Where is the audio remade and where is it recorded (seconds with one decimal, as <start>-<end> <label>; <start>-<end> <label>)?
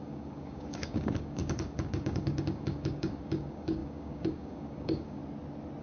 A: 0.0-5.2 remade; 5.2-5.8 recorded